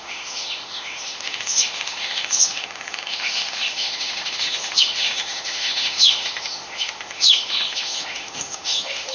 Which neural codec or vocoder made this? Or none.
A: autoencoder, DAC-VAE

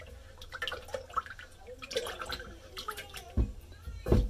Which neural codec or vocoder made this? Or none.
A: none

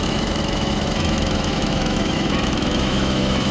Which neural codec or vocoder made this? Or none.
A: autoencoder, DAC-VAE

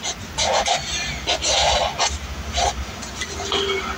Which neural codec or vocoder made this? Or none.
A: none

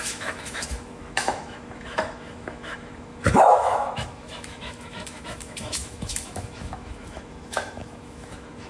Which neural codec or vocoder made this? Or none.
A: autoencoder, DAC-VAE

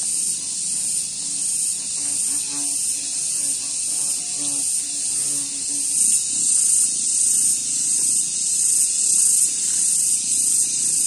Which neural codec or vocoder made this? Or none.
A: none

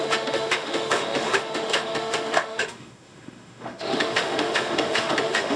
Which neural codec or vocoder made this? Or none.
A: autoencoder, DAC-VAE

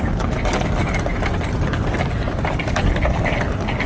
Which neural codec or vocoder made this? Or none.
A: none